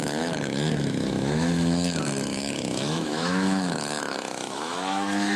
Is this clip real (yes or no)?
no